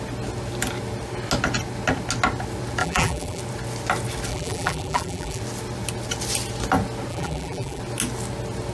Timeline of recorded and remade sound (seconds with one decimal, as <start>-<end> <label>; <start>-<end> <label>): 0.0-2.8 recorded; 2.8-3.4 remade; 3.4-4.3 recorded; 4.3-5.4 remade; 5.4-7.1 recorded; 7.1-7.8 remade; 7.8-8.7 recorded